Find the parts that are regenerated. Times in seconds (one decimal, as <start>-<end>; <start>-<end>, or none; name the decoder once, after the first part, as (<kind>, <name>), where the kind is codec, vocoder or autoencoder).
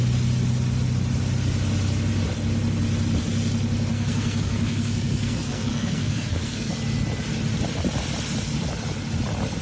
3.9-6.7 (codec, SNAC)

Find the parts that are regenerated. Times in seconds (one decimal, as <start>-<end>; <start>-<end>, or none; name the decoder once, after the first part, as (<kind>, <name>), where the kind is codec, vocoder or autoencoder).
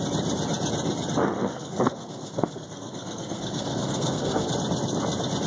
1.2-4.5 (codec, SNAC)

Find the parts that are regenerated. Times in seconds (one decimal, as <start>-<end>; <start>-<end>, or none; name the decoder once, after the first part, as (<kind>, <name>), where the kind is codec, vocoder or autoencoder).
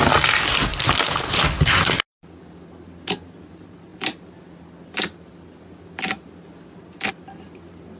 none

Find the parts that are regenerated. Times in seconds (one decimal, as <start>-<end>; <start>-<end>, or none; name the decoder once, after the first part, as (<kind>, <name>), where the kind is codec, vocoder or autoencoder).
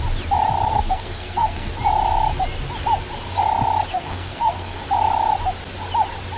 0.7-1.7 (codec, SNAC); 3.9-4.8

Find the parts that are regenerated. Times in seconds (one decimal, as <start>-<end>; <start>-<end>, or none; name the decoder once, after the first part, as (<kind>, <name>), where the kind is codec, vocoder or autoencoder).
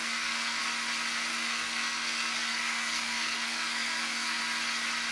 0.0-0.6 (codec, SNAC); 1.3-4.4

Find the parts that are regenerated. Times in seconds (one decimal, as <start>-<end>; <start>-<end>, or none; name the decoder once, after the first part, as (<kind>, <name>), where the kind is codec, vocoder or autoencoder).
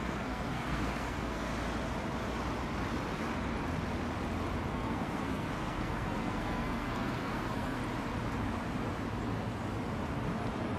0.0-1.5 (codec, SNAC); 4.7-7.8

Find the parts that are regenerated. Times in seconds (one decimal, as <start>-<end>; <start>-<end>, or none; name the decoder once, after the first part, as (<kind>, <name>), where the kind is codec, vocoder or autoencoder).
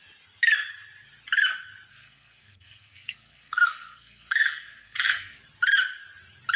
1.9-5.4 (codec, SNAC)